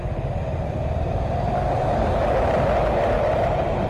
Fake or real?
real